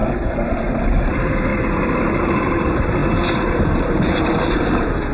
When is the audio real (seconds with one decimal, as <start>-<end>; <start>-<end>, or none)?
0.0-1.1; 1.5-2.2; 3.0-3.6